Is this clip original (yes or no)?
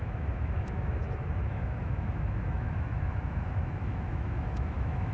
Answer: no